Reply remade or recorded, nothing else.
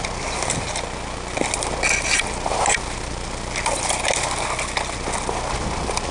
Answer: recorded